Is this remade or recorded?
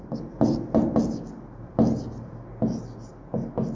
recorded